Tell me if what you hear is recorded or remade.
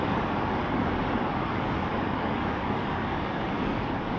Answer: remade